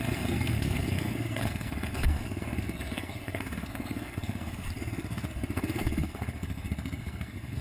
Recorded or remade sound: remade